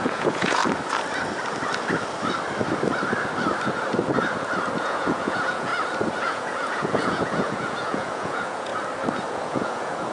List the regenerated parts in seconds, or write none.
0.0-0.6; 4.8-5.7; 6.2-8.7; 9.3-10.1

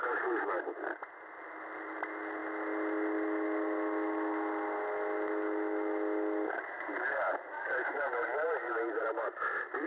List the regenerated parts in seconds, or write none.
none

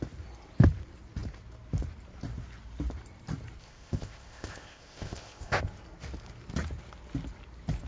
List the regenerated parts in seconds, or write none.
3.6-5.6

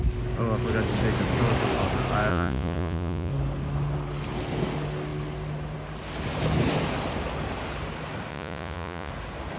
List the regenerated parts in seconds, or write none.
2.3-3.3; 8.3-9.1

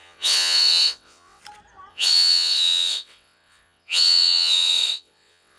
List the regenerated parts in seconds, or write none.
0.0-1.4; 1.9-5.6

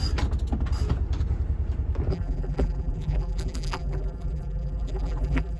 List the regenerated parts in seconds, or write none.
2.1-5.6

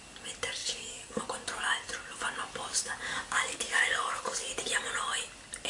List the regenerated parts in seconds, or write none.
0.6-1.2; 2.7-4.5